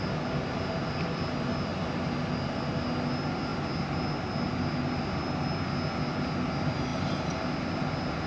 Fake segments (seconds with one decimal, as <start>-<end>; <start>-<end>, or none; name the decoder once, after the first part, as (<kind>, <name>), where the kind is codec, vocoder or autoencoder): none